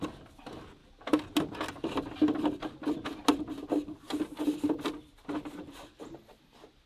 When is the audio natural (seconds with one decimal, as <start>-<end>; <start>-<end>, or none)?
0.0-6.9